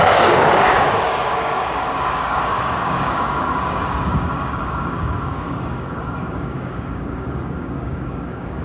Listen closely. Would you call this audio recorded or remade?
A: remade